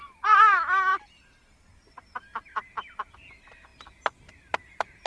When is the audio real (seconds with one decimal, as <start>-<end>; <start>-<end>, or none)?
0.0-5.1